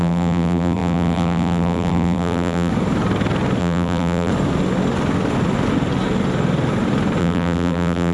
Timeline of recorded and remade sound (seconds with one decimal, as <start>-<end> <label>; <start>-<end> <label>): 0.0-2.7 remade; 2.7-3.6 recorded; 3.6-4.3 remade; 4.3-7.2 recorded; 7.2-8.1 remade